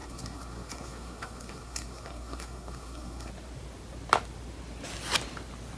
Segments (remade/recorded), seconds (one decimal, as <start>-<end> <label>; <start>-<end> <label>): 0.0-3.3 remade; 3.3-5.8 recorded